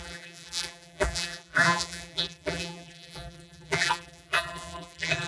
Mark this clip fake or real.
fake